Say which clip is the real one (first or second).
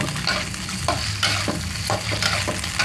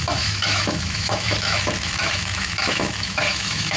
first